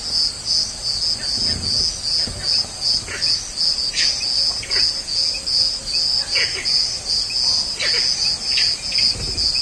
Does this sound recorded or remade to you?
recorded